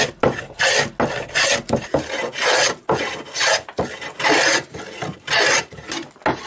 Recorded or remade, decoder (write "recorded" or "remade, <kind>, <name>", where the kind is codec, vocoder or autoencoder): recorded